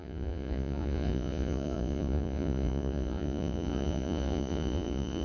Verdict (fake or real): fake